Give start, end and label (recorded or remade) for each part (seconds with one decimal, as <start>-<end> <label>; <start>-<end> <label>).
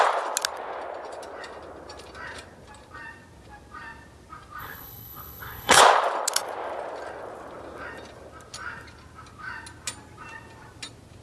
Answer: 0.0-4.6 recorded; 4.6-5.8 remade; 5.8-11.2 recorded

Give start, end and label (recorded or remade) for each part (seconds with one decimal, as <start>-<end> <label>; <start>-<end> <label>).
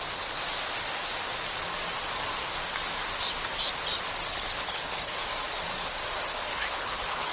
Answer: 0.0-4.3 recorded; 4.3-5.2 remade; 5.2-6.5 recorded; 6.5-7.3 remade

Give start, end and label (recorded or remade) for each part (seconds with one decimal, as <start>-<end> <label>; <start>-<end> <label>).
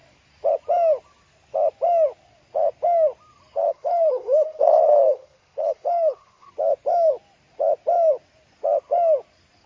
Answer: 0.0-3.6 recorded; 3.6-6.5 remade; 6.5-9.7 recorded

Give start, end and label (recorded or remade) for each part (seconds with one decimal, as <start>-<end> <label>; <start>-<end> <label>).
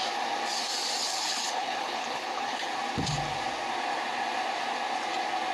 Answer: 0.0-1.0 recorded; 1.0-2.7 remade; 2.7-5.5 recorded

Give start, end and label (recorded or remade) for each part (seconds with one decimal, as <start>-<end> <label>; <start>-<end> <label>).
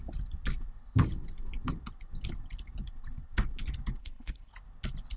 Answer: 0.0-4.0 recorded; 4.0-4.5 remade; 4.5-5.2 recorded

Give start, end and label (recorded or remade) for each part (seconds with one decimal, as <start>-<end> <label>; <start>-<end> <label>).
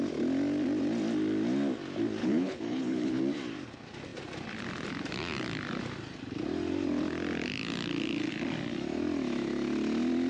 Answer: 0.0-2.2 recorded; 2.2-3.2 remade; 3.2-10.3 recorded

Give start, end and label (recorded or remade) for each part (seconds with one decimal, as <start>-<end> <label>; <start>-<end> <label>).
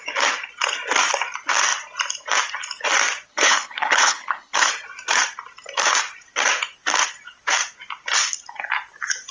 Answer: 0.0-3.3 recorded; 3.3-4.7 remade; 4.7-9.3 recorded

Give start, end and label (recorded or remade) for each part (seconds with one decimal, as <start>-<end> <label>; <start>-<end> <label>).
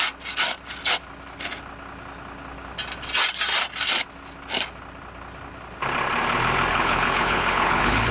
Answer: 0.0-6.7 recorded; 6.7-8.1 remade